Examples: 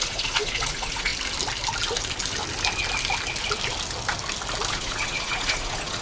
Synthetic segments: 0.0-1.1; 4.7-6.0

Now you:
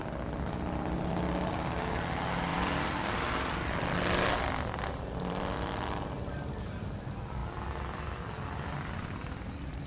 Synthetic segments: 2.5-5.5; 7.4-9.9

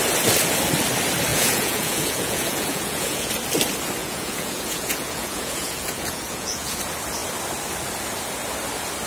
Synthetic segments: 1.3-3.3; 4.0-6.8

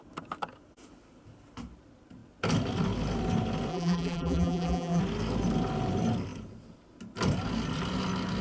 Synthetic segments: 3.7-5.0

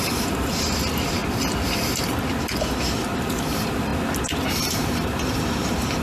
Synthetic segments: 0.0-1.2; 3.2-3.9; 4.5-6.0